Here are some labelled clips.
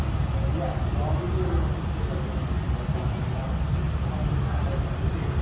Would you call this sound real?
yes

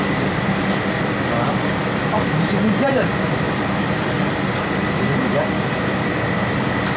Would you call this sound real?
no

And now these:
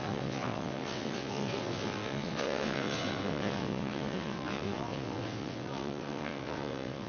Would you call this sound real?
no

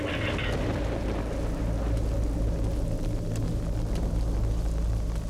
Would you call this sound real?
yes